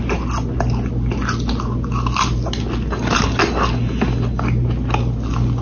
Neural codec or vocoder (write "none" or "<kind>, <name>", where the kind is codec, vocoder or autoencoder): none